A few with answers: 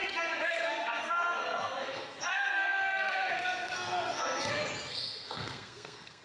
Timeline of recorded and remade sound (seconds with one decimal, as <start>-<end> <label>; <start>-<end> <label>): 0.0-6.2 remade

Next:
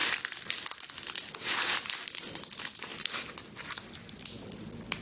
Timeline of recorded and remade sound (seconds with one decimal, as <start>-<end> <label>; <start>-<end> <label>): 0.0-5.0 recorded

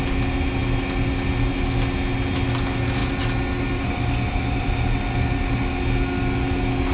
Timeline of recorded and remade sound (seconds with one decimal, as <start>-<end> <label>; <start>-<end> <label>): 0.0-6.9 recorded

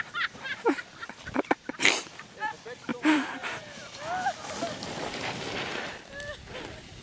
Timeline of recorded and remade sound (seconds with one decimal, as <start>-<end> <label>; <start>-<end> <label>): 0.0-2.9 recorded; 2.9-4.0 remade; 4.0-7.0 recorded